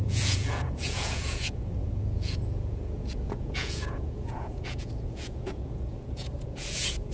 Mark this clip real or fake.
fake